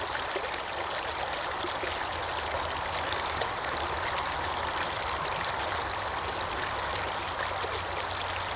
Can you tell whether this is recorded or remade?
recorded